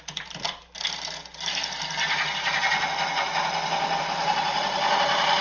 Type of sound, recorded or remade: recorded